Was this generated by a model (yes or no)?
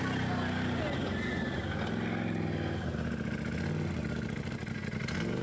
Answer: no